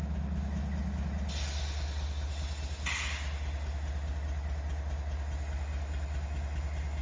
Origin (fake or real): real